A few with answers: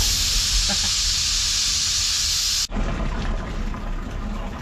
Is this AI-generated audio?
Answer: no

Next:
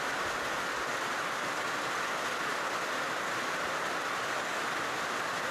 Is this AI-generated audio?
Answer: no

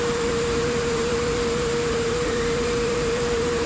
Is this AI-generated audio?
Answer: yes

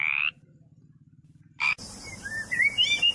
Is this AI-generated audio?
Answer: yes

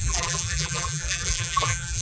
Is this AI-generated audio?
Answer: yes